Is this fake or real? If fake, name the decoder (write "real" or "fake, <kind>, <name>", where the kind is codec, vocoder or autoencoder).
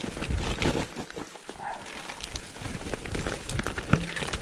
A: real